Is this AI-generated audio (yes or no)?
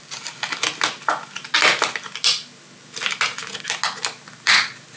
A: no